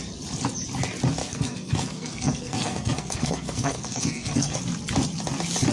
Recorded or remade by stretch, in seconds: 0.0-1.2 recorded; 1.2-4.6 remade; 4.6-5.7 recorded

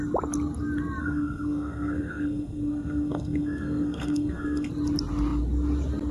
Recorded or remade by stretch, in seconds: 0.0-1.0 recorded; 1.0-4.7 remade; 4.7-6.1 recorded

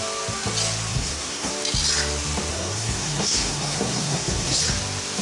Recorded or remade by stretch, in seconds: 0.0-0.9 recorded; 0.9-1.5 remade; 1.5-2.5 recorded; 2.5-4.6 remade; 4.6-5.2 recorded